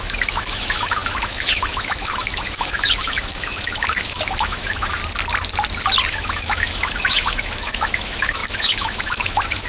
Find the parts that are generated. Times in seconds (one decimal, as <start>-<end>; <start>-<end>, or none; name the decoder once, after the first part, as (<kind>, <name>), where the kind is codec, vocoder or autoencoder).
0.0-5.0 (autoencoder, DAC-VAE); 6.1-9.7